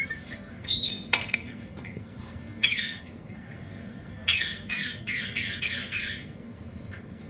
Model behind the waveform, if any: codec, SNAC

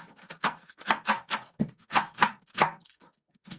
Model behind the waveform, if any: codec, SNAC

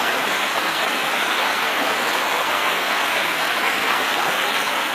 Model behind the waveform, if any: codec, SNAC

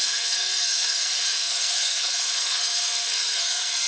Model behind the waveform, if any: codec, SNAC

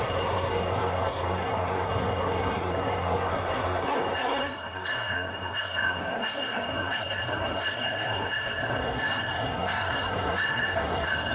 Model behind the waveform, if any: codec, SNAC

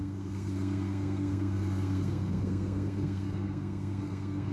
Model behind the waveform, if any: codec, SNAC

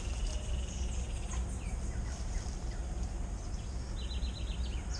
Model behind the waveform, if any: none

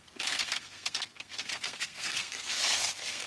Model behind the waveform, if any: codec, SNAC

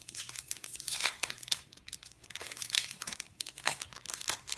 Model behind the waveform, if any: codec, SNAC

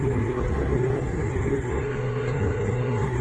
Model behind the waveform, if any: codec, SNAC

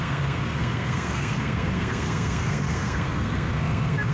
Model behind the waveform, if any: codec, SNAC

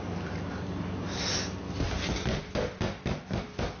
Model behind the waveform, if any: none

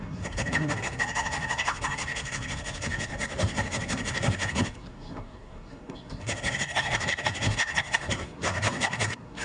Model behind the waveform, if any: codec, SNAC